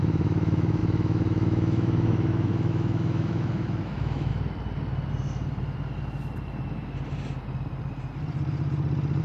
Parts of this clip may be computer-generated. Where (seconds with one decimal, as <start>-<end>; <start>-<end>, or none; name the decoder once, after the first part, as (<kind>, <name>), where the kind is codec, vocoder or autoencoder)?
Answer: 0.0-4.3 (autoencoder, DAC-VAE)